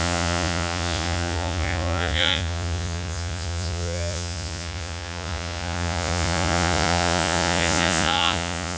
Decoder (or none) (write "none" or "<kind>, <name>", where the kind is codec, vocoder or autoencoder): vocoder, Vocos